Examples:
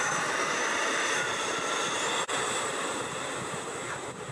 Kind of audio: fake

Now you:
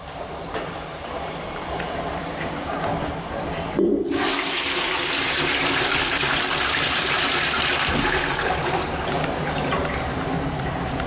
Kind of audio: fake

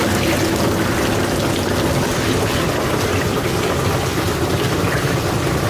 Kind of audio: real